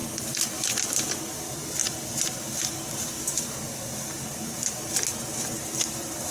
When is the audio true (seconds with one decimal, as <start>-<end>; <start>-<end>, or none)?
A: 1.0-6.3